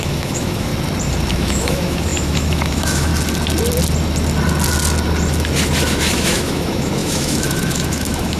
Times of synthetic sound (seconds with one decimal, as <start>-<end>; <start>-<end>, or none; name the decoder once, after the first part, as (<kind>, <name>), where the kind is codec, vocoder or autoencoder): 0.0-0.7 (autoencoder, DAC-VAE); 1.3-3.1; 5.9-8.4